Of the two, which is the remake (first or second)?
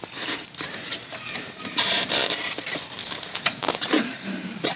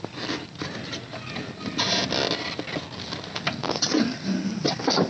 first